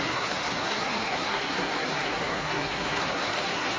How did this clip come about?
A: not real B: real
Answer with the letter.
A